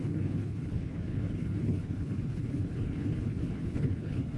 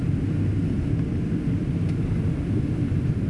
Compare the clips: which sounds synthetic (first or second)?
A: first